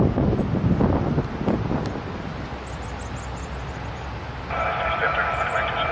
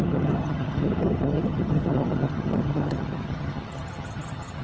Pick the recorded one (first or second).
first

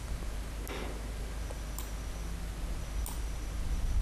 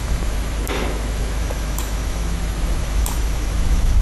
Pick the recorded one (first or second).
first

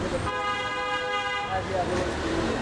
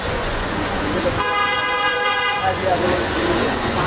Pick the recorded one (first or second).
first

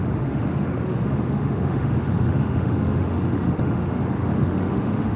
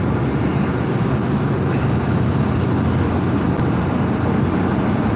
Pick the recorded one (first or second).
second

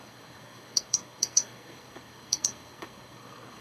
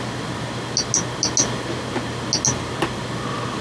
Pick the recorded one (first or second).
second